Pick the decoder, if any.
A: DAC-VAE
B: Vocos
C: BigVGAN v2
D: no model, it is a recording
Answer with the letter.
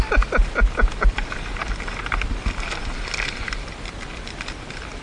D